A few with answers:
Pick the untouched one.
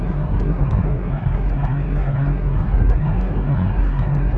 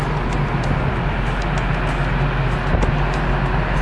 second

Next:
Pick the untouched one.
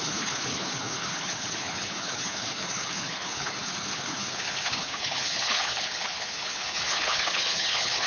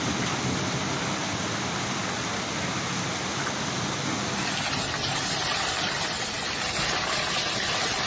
second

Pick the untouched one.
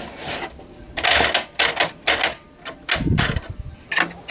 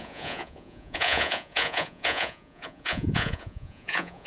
first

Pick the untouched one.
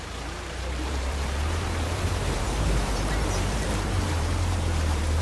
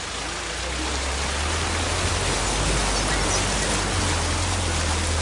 second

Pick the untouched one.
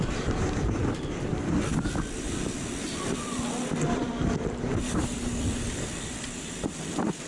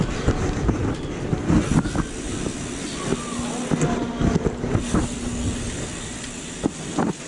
second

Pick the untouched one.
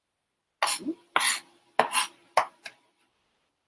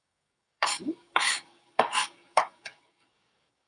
first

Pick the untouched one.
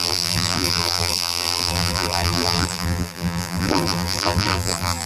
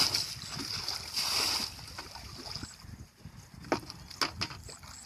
second